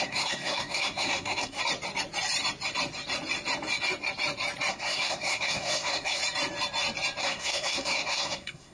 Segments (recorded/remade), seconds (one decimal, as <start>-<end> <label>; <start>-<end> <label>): 0.0-1.6 remade; 1.6-4.7 recorded; 4.7-6.2 remade; 6.2-7.2 recorded; 7.2-8.7 remade